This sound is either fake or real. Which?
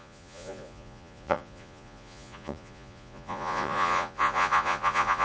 fake